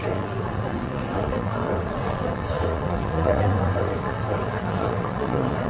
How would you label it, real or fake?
fake